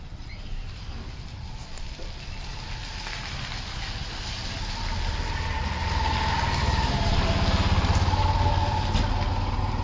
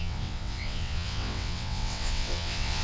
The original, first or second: first